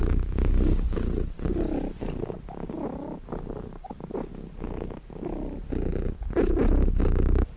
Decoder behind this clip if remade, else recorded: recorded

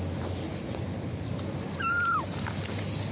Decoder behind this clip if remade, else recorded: recorded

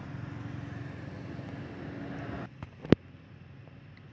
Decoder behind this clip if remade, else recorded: recorded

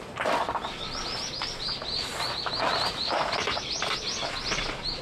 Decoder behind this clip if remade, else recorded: recorded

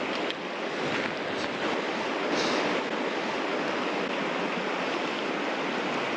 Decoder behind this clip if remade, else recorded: recorded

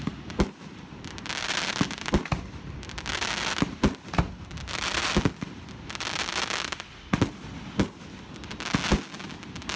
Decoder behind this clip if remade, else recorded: recorded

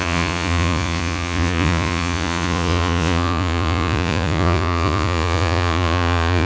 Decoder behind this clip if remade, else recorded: remade, vocoder, Vocos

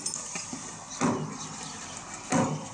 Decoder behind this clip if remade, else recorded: recorded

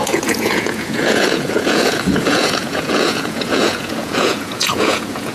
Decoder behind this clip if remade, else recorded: remade, vocoder, Vocos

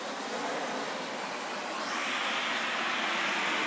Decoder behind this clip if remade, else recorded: recorded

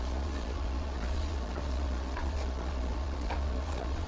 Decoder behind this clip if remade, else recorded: remade, vocoder, Vocos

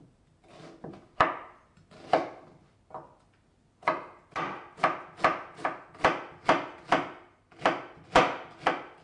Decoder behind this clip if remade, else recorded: recorded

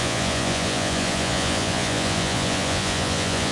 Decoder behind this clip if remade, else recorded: remade, vocoder, Vocos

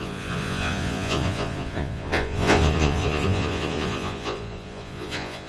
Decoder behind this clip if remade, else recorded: remade, vocoder, Vocos